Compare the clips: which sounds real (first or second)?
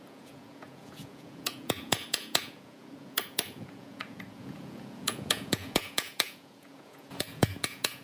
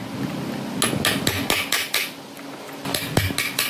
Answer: second